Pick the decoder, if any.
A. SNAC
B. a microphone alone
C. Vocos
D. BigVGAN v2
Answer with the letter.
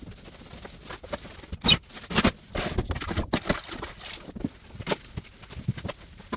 B